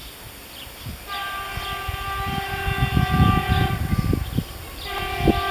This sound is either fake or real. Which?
real